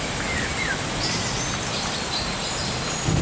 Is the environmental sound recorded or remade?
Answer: recorded